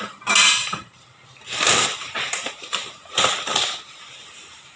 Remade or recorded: remade